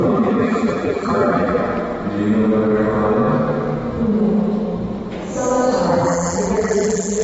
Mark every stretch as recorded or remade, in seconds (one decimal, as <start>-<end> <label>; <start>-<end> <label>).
0.0-1.6 remade; 1.6-5.9 recorded; 5.9-7.2 remade